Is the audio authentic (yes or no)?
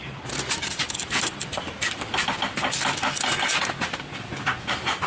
yes